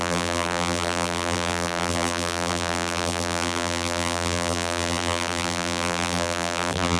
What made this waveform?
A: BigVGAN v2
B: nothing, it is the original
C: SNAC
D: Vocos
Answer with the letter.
A